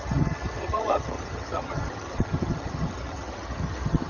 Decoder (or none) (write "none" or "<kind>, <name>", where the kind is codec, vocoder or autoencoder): vocoder, HiFi-GAN